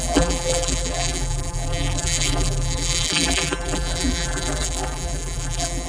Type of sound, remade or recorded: remade